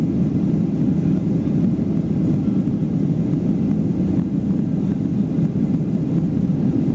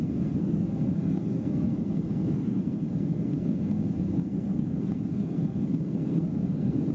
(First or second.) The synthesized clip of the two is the second